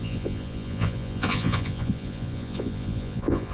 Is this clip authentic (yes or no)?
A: no